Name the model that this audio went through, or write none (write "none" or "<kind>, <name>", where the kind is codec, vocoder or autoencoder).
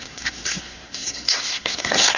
codec, SNAC